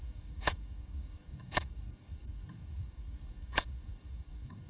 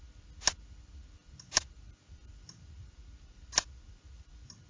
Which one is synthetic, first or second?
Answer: first